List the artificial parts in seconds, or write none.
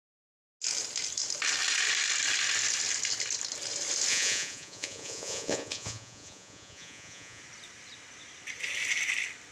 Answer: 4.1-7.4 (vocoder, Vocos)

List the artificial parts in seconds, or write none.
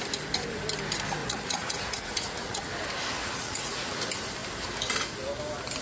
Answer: 1.2-2.7 (vocoder, Vocos); 3.2-3.9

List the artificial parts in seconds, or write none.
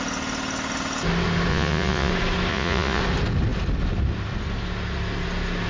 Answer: 1.5-2.1 (vocoder, Vocos); 2.5-3.0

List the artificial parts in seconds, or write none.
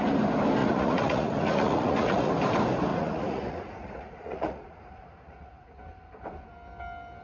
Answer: 0.6-2.3 (vocoder, Vocos); 2.9-5.8